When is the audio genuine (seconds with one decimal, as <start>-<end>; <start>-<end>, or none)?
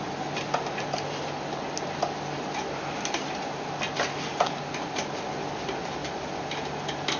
0.0-7.2